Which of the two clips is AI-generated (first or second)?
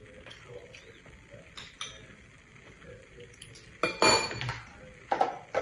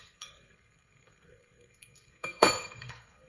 second